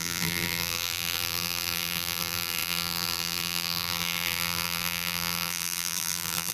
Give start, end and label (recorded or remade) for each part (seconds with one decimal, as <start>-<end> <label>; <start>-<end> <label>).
0.0-6.5 remade